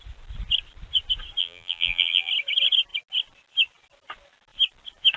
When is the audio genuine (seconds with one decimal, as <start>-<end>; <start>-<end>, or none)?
0.0-1.4; 2.3-5.2